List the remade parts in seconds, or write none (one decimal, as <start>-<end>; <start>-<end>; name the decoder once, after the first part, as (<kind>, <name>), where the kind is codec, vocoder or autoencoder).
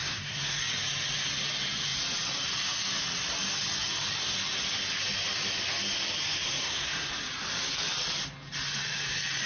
0.0-0.6 (codec, SNAC); 6.6-7.1